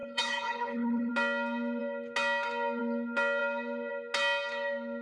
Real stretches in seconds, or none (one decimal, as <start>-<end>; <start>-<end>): 1.1-5.0